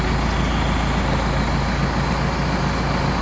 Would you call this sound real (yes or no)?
yes